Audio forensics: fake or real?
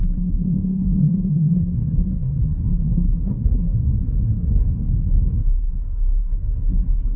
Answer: fake